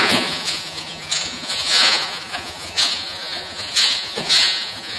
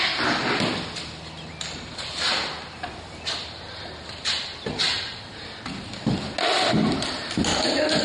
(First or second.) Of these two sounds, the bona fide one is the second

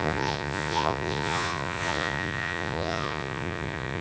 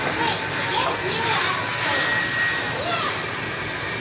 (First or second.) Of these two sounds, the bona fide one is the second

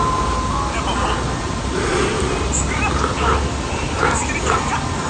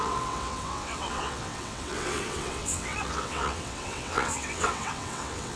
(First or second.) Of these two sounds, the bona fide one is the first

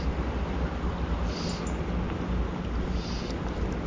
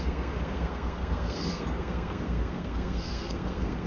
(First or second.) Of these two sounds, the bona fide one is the first